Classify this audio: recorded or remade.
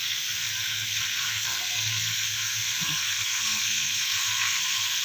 remade